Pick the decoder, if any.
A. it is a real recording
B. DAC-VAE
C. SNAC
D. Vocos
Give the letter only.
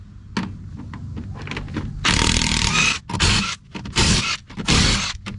A